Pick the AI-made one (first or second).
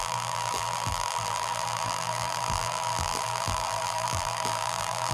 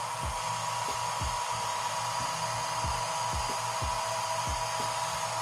first